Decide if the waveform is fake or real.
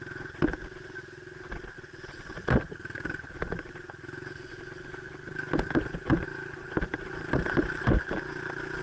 real